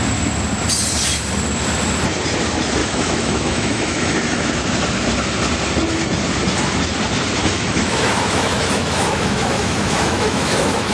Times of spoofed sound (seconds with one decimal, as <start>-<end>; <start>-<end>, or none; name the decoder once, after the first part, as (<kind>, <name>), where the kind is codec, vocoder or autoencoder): 2.8-4.5 (autoencoder, DAC-VAE); 7.4-10.9